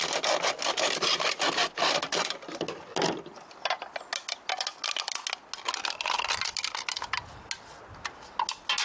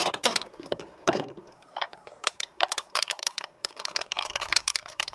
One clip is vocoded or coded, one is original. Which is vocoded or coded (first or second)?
second